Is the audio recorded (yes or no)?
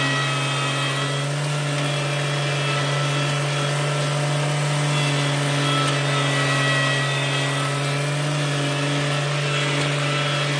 yes